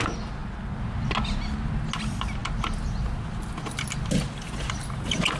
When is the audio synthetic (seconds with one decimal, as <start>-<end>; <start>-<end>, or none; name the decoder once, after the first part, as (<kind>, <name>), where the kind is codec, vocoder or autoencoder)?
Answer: none